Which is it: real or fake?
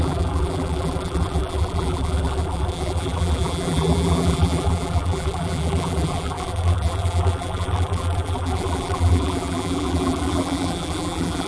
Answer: fake